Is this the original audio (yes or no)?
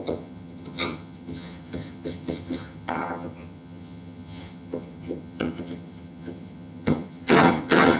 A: no